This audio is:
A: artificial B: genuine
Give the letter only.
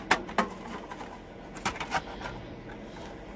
B